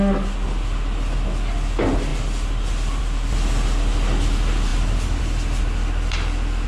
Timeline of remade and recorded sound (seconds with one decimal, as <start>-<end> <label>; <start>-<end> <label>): 0.0-6.7 recorded